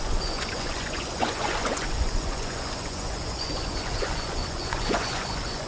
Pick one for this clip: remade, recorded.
remade